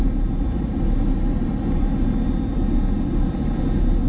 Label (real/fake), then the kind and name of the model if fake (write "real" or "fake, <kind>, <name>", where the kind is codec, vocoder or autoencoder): real